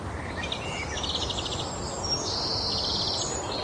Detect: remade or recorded recorded